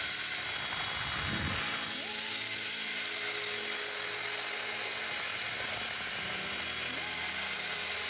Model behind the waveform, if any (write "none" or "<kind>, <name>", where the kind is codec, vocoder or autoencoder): none